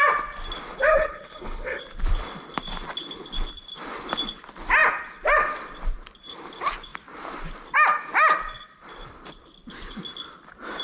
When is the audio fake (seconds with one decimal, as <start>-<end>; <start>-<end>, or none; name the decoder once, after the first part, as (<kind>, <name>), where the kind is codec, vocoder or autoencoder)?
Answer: 0.9-1.8 (codec, HILCodec)

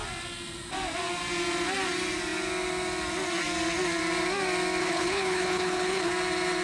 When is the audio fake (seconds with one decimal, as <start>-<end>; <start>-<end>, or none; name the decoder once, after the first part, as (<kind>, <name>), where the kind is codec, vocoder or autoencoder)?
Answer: 4.8-6.1 (codec, HILCodec)

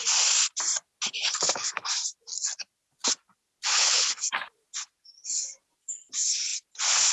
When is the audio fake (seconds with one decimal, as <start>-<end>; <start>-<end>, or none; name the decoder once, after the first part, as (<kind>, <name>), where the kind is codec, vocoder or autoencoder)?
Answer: 3.7-4.3 (codec, HILCodec)

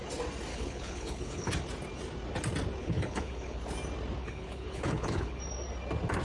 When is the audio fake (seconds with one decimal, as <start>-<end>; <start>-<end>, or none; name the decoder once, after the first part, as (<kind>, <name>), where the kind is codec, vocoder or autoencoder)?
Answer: 0.5-1.5 (codec, HILCodec); 2.8-3.6; 4.2-5.4